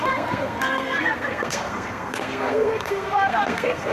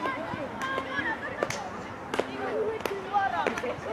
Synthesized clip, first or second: first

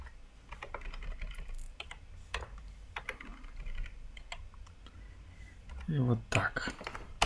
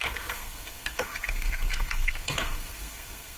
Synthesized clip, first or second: second